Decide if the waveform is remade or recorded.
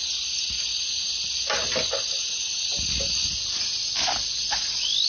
recorded